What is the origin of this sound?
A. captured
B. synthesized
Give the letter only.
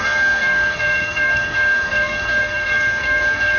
B